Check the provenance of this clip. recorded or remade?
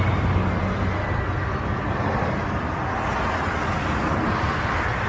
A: recorded